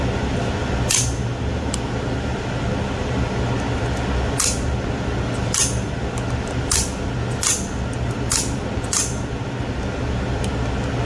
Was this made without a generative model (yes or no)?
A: yes